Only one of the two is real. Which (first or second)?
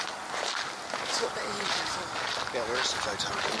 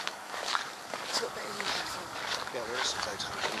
first